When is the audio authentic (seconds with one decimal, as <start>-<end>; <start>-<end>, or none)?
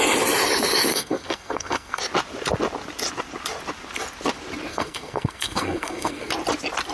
0.0-0.9; 2.0-4.7; 6.3-6.9